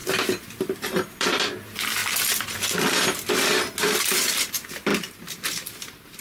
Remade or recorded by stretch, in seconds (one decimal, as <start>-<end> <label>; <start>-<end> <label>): 0.0-2.0 remade; 2.0-4.0 recorded; 4.0-6.2 remade